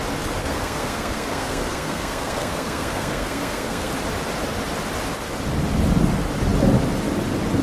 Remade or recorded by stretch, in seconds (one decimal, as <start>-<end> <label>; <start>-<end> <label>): 0.0-0.4 recorded; 0.4-3.9 remade; 3.9-7.6 recorded